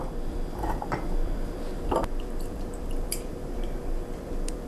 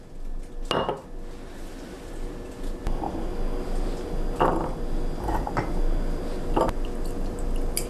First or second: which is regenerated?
first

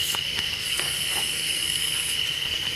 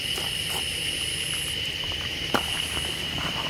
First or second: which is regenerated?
first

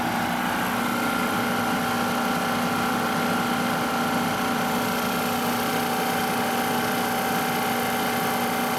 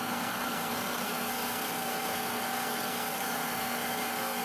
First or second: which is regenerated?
second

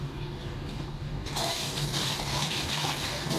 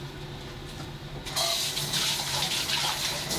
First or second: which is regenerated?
first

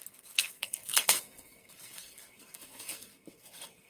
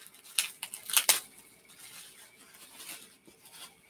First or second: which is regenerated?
first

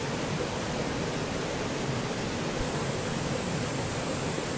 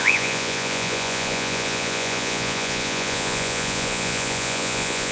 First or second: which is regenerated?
second